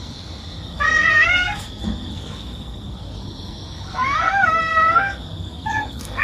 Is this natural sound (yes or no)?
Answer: no